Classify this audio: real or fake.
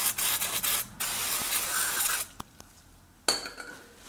real